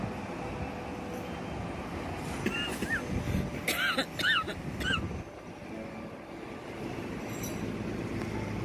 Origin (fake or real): real